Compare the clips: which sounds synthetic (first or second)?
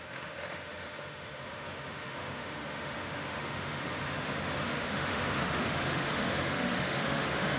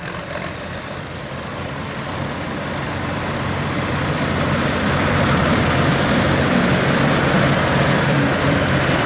first